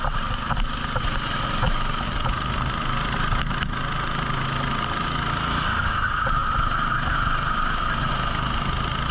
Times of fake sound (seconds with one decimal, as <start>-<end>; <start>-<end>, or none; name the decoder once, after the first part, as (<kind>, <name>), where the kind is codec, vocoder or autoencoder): none